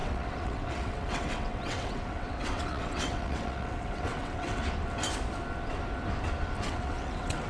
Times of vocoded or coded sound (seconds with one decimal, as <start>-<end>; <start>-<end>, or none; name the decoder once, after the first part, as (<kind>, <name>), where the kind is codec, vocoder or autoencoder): 0.0-4.6 (vocoder, WaveNeXt); 6.6-7.5